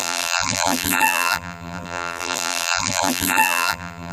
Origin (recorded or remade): remade